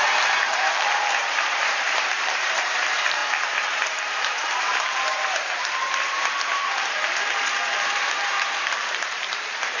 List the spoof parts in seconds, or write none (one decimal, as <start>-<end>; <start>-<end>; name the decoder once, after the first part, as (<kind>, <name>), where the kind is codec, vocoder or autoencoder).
0.0-9.8 (vocoder, BigVGAN v2)